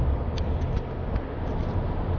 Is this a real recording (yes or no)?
no